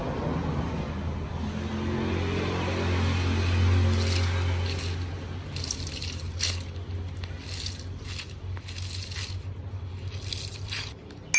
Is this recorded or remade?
recorded